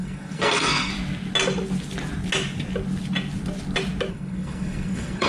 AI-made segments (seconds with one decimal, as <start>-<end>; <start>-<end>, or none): 0.0-0.9; 4.1-5.3